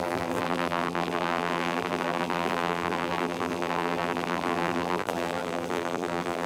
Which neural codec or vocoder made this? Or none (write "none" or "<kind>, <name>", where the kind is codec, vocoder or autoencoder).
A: vocoder, BigVGAN v2